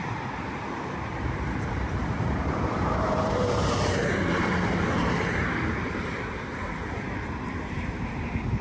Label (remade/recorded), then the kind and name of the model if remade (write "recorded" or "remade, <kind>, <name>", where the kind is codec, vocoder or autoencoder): remade, vocoder, BigVGAN v2